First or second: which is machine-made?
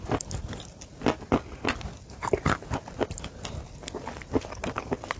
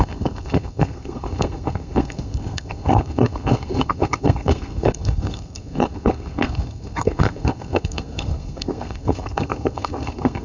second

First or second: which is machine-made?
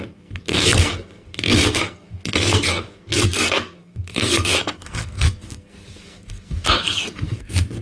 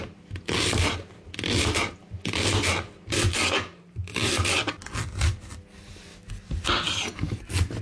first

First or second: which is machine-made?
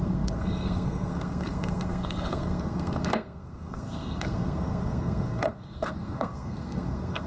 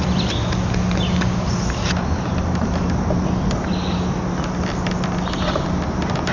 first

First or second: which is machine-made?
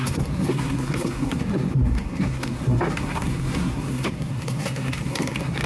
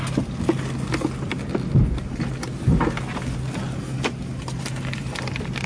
first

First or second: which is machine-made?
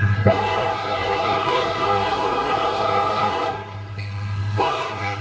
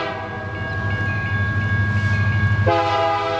first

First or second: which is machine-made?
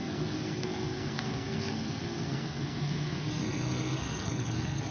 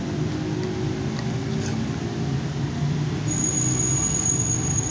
first